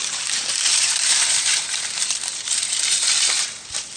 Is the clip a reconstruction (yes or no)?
yes